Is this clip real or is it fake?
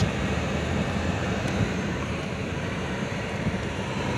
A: fake